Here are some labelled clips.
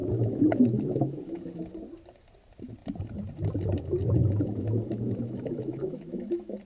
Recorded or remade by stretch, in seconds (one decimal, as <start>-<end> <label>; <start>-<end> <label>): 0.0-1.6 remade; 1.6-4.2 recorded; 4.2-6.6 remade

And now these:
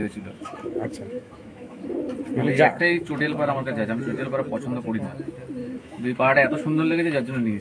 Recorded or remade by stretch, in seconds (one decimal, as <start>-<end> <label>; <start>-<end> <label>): 0.0-1.9 remade; 1.9-2.4 recorded; 2.4-4.0 remade; 4.0-5.6 recorded; 5.6-7.6 remade

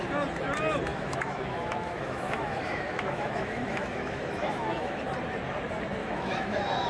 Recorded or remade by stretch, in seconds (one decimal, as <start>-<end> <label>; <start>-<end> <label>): 0.0-0.9 recorded; 0.9-5.0 remade; 5.0-6.0 recorded; 6.0-6.9 remade

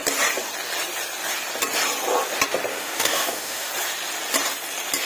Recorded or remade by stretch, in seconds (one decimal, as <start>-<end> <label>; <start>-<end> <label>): 0.0-2.7 recorded; 2.7-3.7 remade; 3.7-5.0 recorded

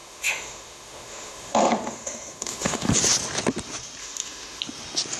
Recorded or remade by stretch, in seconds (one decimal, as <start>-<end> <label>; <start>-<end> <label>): 0.0-2.9 remade; 2.9-4.0 recorded; 4.0-4.6 remade; 4.6-5.2 recorded

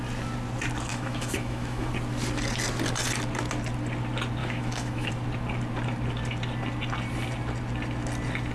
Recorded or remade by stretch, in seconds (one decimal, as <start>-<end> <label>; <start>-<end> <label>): 0.0-0.9 recorded; 0.9-1.9 remade; 1.9-4.4 recorded; 4.4-5.1 remade; 5.1-8.5 recorded

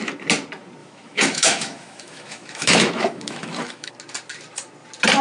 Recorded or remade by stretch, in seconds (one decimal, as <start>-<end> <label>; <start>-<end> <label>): 0.0-0.8 recorded; 0.8-3.9 remade; 3.9-5.2 recorded

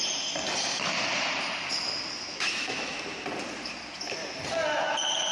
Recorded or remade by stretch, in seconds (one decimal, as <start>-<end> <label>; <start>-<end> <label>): 0.0-2.3 recorded; 2.3-3.0 remade; 3.0-5.3 recorded